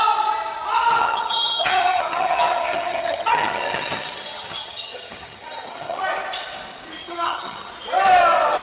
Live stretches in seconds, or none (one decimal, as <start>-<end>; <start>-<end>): 0.0-1.0; 6.0-7.0; 7.7-8.6